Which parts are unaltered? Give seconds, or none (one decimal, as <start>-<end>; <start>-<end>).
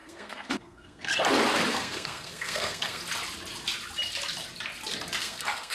1.1-1.7; 3.0-5.2